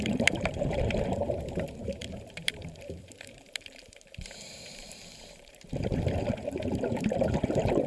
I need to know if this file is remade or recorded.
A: remade